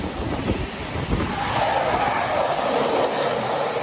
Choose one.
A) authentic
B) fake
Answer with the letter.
A